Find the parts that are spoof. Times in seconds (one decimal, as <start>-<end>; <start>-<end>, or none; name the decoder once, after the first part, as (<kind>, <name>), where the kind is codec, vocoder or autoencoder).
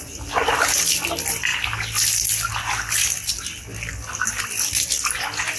none